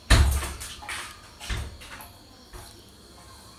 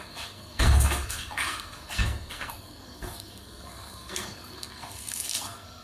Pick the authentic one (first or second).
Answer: first